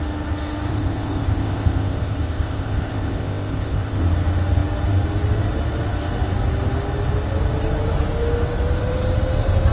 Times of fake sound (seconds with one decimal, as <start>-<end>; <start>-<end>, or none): 0.7-4.0